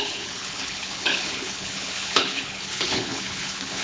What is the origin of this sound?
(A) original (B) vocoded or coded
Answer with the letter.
B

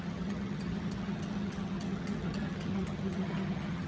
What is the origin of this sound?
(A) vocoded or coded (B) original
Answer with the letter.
A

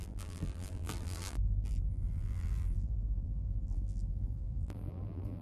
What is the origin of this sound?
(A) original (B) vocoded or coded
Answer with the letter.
B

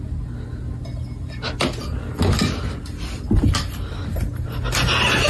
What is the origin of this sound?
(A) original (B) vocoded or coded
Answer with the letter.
A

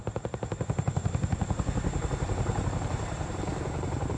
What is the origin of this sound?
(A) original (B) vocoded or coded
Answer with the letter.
B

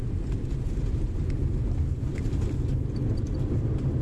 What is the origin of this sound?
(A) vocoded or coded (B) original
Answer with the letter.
B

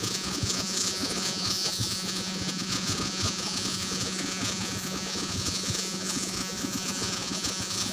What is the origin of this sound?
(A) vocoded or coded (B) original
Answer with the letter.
A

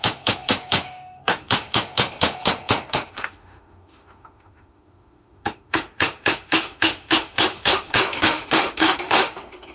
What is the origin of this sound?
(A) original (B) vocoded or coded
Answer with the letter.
B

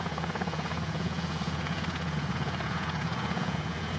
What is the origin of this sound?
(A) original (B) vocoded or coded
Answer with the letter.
B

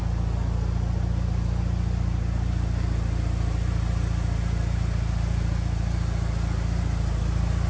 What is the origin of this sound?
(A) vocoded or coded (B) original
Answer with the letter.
B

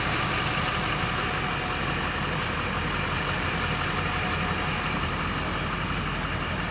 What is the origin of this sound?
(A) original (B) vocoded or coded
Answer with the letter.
A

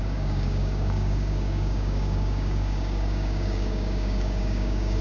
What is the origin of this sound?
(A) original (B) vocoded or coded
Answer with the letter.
B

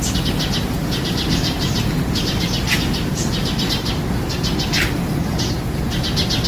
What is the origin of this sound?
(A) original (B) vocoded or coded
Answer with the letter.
A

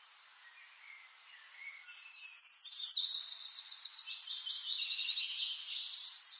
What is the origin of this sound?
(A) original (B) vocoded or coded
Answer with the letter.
B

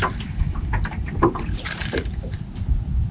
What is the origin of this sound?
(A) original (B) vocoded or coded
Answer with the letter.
B